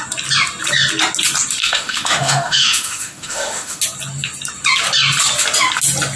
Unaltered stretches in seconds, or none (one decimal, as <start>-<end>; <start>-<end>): 0.0-1.6; 3.8-6.2